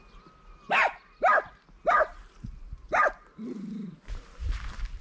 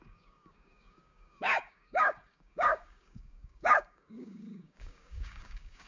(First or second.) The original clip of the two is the first